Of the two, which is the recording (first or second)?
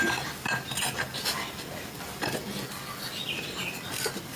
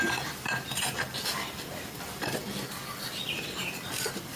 first